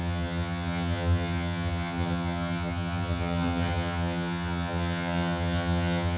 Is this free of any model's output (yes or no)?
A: no